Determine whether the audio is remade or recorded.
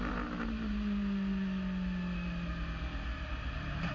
recorded